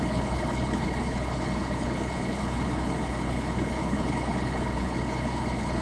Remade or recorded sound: remade